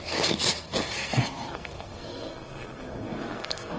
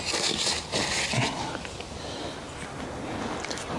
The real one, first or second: second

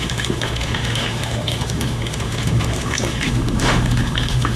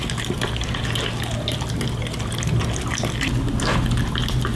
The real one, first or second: second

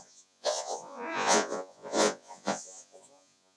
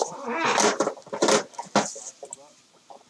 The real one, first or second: second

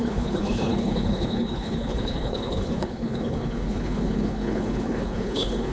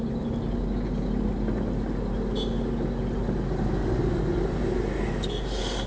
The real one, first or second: second